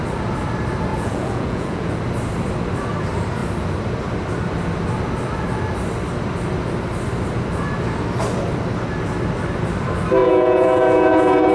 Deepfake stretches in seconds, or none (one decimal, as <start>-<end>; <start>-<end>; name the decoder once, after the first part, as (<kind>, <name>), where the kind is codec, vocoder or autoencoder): 0.9-2.0 (vocoder, Vocos); 10.2-11.5

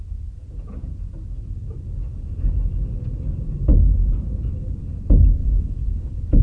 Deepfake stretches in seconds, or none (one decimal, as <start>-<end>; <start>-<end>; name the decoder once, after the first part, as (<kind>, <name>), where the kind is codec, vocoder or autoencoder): 3.7-4.2 (vocoder, Vocos); 5.4-6.4

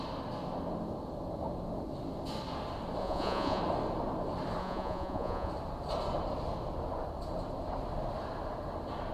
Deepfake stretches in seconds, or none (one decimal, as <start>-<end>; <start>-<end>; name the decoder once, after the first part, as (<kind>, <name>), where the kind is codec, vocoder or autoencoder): 3.0-3.6 (vocoder, Vocos); 4.6-5.5

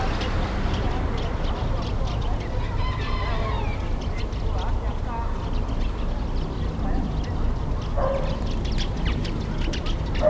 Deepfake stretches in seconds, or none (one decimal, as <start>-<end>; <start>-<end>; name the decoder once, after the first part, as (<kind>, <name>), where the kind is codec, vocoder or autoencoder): none